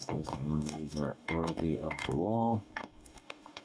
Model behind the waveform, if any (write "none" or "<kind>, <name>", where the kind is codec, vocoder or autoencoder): codec, DAC